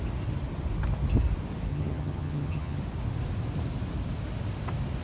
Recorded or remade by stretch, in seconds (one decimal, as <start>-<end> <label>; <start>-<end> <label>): 0.0-1.7 recorded; 1.7-2.8 remade; 2.8-5.0 recorded